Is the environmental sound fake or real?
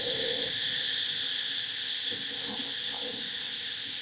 fake